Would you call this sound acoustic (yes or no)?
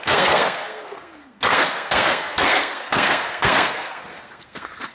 no